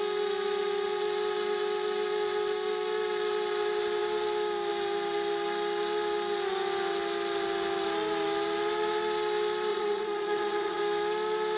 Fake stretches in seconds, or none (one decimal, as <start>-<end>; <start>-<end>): 9.7-10.8